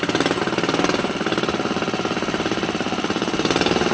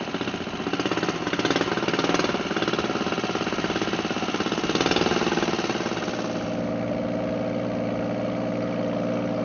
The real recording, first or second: second